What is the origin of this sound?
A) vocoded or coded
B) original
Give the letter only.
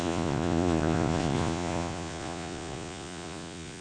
A